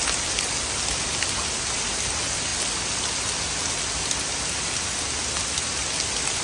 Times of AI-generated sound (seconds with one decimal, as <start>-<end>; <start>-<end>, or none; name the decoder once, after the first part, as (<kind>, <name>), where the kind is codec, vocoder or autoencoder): none